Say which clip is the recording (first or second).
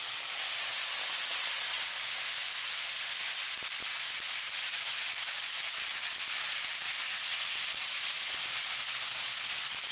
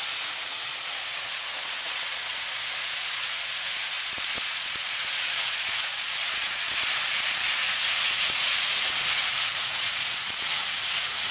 first